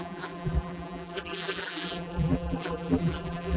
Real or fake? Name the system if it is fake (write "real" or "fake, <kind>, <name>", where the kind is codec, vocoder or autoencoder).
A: fake, vocoder, BigVGAN v2